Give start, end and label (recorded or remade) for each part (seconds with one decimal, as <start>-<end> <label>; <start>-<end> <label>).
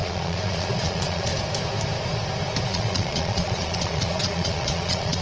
0.0-1.3 remade; 1.3-2.6 recorded; 2.6-5.2 remade